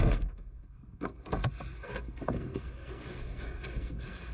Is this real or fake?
fake